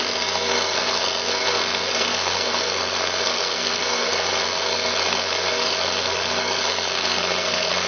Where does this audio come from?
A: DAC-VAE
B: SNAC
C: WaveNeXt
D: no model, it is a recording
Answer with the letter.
B